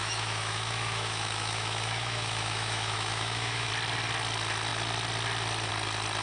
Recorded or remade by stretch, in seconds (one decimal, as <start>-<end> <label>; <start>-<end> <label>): 0.0-3.7 remade; 3.7-6.2 recorded